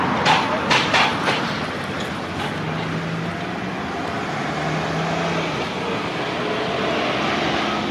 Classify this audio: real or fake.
real